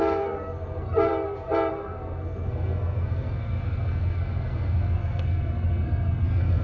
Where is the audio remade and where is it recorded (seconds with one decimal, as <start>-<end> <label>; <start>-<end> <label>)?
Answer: 0.0-1.1 remade; 1.1-1.7 recorded; 1.7-6.6 remade